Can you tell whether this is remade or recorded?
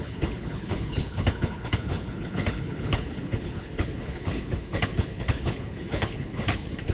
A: remade